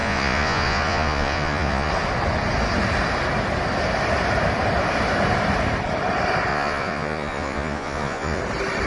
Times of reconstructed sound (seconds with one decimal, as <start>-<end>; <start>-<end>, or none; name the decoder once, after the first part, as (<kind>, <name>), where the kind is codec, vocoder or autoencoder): 0.0-1.9 (vocoder, Vocos); 6.5-8.4